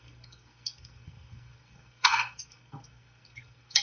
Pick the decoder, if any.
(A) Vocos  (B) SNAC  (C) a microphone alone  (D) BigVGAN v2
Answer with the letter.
B